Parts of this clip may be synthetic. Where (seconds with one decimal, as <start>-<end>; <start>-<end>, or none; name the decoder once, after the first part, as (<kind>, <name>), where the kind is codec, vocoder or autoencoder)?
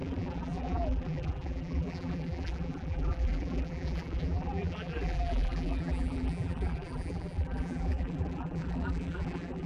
0.0-9.7 (vocoder, BigVGAN v2)